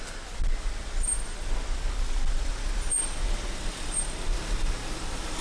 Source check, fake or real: real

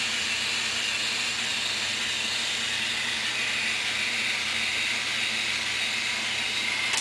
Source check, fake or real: real